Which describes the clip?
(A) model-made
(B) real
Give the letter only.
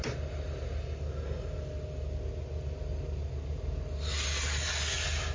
B